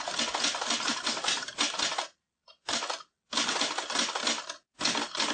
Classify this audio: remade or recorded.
recorded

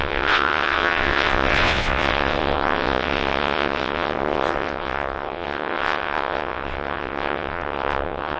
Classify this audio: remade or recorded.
remade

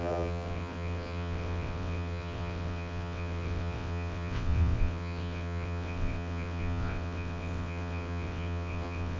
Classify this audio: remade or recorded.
remade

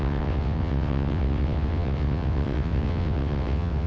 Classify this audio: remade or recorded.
remade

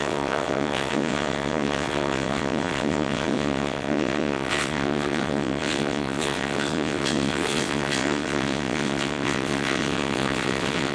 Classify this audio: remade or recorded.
remade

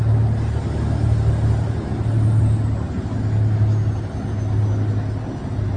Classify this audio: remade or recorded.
recorded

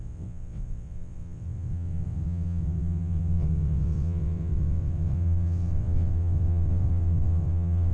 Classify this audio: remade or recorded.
remade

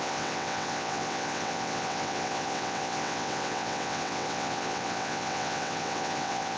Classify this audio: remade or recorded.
remade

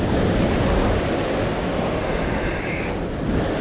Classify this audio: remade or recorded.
recorded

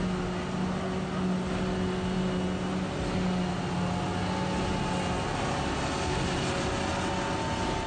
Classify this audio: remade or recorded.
recorded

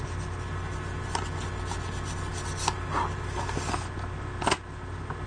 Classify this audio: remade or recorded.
recorded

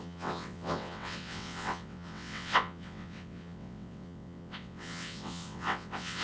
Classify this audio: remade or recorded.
remade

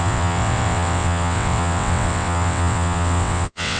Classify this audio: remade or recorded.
remade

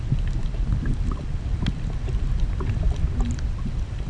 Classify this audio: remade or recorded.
recorded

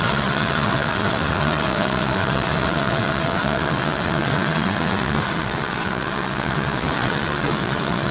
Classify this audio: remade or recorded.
remade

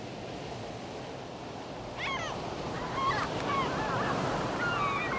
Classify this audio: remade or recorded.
recorded